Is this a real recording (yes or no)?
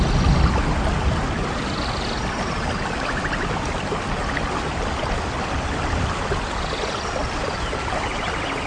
yes